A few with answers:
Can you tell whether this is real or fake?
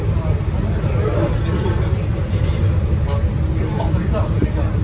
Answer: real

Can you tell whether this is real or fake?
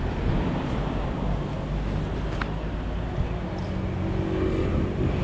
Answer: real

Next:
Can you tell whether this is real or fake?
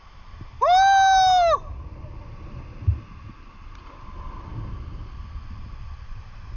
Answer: real